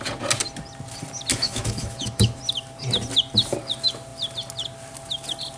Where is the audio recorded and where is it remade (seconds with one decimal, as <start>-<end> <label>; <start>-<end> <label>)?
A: 0.0-1.3 recorded; 1.3-2.4 remade; 2.4-5.6 recorded